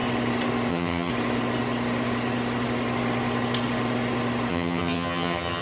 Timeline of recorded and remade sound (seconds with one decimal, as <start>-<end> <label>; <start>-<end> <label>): 0.0-0.7 recorded; 0.7-1.1 remade; 1.1-4.5 recorded; 4.5-5.6 remade